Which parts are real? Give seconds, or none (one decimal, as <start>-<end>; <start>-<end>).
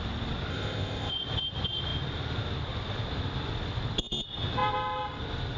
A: 0.0-0.5; 1.1-5.6